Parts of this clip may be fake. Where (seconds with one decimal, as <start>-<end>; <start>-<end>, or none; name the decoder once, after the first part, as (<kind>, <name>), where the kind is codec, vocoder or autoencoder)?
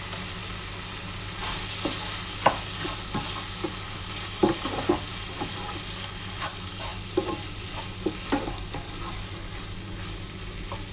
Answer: none